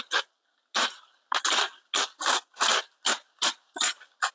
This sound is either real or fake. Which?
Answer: real